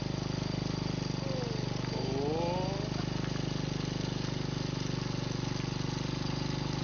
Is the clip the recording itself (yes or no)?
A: yes